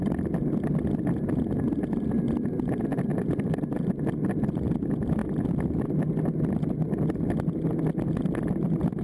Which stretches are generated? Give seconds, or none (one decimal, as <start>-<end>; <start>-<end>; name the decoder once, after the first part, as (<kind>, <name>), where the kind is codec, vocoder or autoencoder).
3.1-4.0 (vocoder, BigVGAN v2); 5.2-5.8